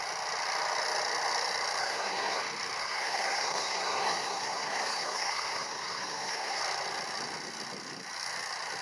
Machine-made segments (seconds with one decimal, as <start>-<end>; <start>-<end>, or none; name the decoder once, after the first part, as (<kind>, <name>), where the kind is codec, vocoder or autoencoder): 1.8-2.4 (codec, SNAC); 2.8-6.6